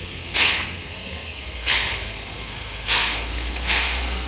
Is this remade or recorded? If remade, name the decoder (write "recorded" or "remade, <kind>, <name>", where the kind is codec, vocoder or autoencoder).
remade, codec, SNAC